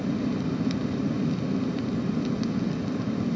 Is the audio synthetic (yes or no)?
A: no